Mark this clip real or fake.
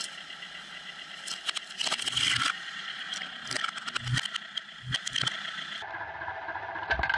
real